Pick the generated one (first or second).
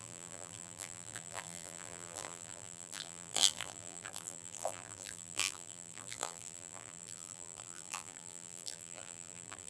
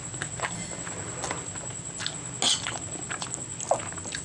first